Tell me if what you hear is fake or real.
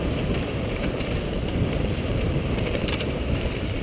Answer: fake